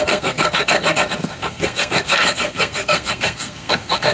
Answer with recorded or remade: remade